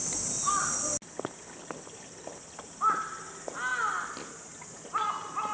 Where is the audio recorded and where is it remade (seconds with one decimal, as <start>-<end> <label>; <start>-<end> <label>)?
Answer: 0.0-5.5 recorded